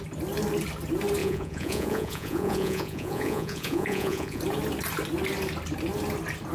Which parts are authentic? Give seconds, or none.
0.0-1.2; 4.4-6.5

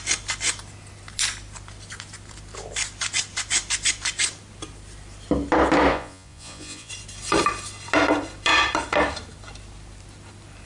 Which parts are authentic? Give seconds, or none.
0.0-5.9; 6.9-10.7

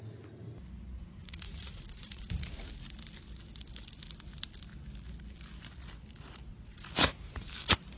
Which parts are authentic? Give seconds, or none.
0.0-1.0; 2.7-6.5; 7.5-8.0

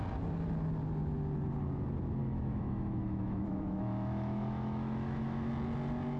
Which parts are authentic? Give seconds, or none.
0.0-2.2; 5.5-6.2